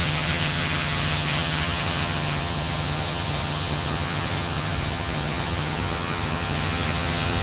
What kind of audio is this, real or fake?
fake